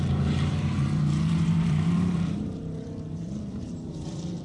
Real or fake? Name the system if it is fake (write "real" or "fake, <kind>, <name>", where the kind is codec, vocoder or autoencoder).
fake, vocoder, BigVGAN v2